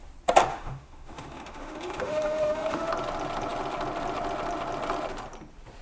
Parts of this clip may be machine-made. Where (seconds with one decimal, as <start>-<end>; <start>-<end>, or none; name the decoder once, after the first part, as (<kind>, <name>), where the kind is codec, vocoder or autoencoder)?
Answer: 0.5-2.9 (autoencoder, DAC-VAE)